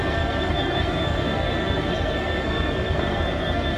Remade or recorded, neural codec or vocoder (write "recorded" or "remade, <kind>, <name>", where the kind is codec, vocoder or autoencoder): remade, codec, SNAC